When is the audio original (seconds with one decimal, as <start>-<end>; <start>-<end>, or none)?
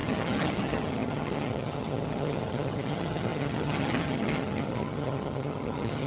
none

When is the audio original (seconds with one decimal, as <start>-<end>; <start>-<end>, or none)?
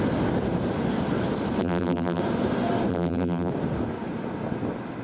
0.0-1.6; 2.2-2.9; 3.5-5.0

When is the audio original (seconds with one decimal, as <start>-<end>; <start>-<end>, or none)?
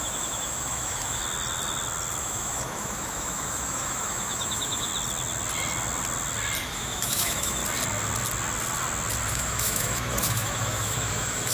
1.2-2.2; 4.9-6.6; 7.6-9.3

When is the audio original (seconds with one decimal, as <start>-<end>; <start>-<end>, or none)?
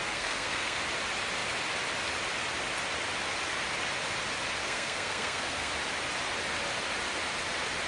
0.8-4.6; 5.7-7.9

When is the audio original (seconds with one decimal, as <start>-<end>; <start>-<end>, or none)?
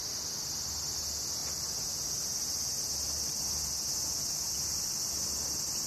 0.0-5.9